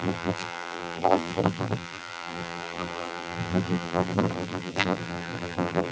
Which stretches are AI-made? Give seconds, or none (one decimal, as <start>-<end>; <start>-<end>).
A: 0.0-5.9